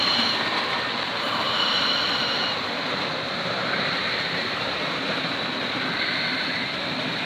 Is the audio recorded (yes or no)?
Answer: no